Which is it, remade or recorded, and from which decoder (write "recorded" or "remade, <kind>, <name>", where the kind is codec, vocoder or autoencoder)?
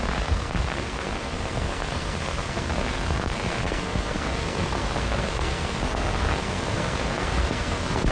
remade, codec, SNAC